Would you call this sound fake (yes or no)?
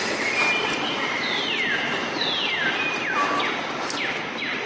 no